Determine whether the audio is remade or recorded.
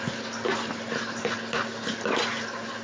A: recorded